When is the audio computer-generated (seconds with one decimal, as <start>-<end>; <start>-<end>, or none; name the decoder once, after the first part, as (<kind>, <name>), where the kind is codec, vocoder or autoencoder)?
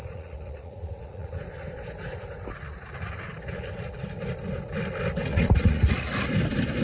0.0-1.3 (vocoder, Vocos); 5.3-6.1